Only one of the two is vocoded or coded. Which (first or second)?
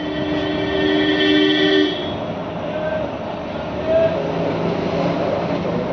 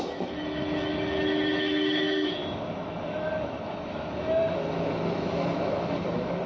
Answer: second